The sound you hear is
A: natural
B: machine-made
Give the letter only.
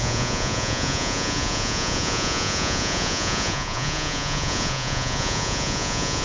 B